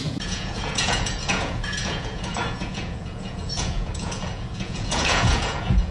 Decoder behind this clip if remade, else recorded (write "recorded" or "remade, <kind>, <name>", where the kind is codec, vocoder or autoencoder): remade, vocoder, Vocos